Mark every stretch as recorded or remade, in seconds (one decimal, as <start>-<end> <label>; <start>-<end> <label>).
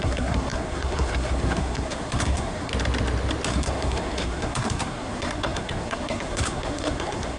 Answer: 0.0-2.7 remade; 2.7-3.5 recorded; 3.5-7.4 remade